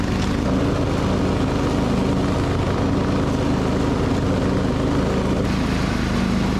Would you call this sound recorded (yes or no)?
yes